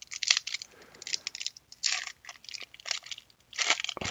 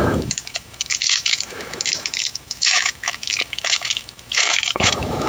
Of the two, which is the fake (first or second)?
second